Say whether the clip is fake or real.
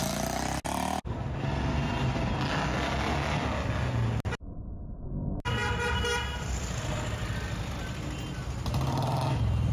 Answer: real